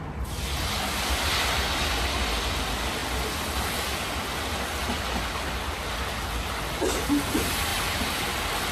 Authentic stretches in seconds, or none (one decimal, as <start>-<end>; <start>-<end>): 0.0-8.7